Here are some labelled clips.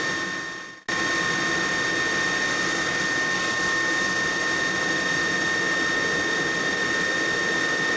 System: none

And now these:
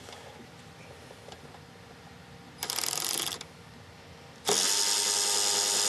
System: none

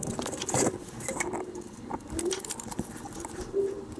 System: vocoder, BigVGAN v2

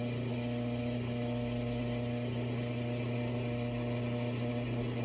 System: none